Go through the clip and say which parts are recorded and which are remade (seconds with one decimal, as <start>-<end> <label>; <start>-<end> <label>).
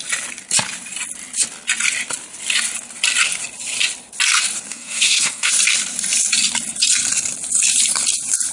0.0-4.7 recorded; 4.7-5.5 remade; 5.5-8.5 recorded